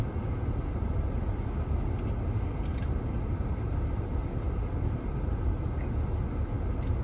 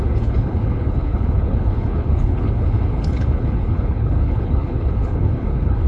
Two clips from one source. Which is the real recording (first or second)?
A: first